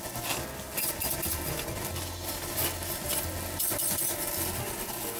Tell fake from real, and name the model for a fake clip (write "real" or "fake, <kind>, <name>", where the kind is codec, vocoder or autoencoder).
real